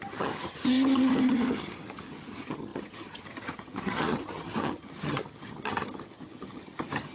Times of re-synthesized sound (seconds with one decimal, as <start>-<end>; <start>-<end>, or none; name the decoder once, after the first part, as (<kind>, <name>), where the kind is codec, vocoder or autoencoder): 0.0-7.1 (vocoder, HiFi-GAN)